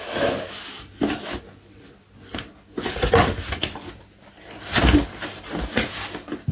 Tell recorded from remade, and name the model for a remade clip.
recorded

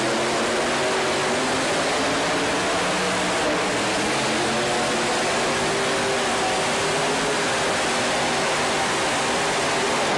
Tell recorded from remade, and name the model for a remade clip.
recorded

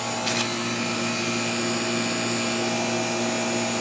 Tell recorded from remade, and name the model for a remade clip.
recorded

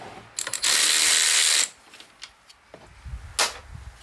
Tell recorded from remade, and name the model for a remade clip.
recorded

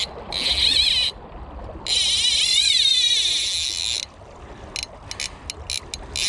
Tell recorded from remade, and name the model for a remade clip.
recorded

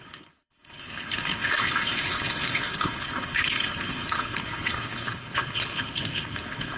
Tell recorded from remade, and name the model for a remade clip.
remade, codec, HILCodec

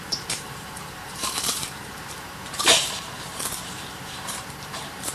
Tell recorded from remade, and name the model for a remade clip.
remade, vocoder, BigVGAN v2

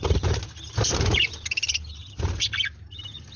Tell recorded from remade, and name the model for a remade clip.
recorded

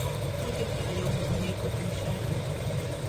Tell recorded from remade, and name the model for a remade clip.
remade, vocoder, BigVGAN v2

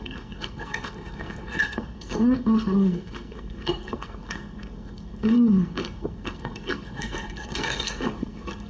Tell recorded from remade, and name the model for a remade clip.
remade, codec, SNAC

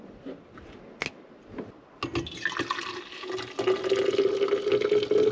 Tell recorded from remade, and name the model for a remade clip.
recorded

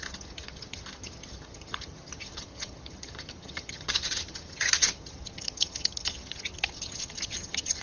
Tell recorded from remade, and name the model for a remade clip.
remade, vocoder, HiFi-GAN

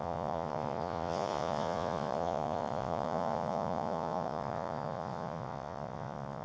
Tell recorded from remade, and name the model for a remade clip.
remade, vocoder, Vocos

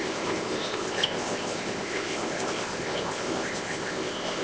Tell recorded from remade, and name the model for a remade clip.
remade, codec, ZipCodec